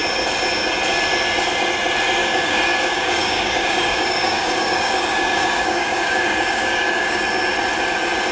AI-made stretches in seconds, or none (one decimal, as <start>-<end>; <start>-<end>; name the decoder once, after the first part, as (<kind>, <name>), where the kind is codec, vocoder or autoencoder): 2.2-7.2 (codec, DAC)